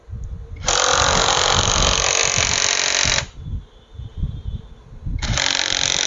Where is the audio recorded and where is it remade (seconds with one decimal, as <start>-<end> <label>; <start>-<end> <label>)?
0.0-6.1 recorded